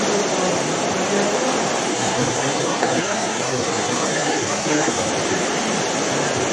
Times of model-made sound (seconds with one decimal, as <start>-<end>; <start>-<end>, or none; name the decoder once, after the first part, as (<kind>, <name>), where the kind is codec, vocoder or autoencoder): 1.9-5.1 (codec, SNAC)